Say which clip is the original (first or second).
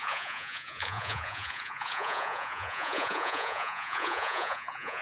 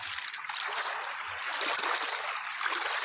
second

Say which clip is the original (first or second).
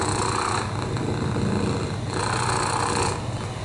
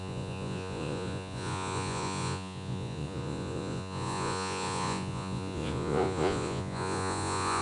first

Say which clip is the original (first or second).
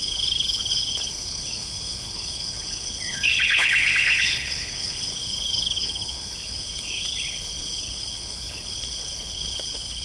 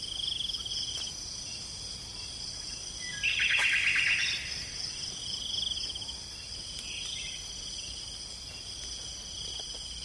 second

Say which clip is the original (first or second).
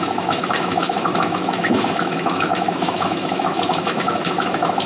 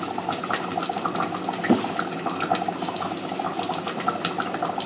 second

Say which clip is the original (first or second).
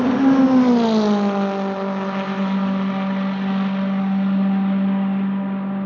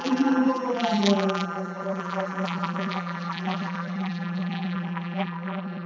first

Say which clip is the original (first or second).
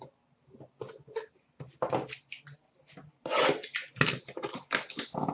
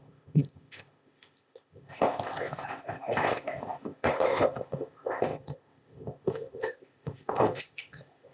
first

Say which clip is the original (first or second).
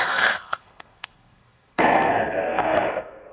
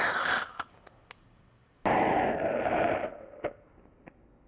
second